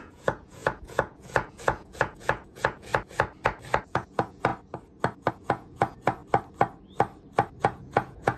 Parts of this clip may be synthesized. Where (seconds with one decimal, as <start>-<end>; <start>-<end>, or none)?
0.0-2.9; 3.8-4.5; 5.3-6.2; 7.6-8.4